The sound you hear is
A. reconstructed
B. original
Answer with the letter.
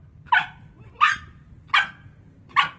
B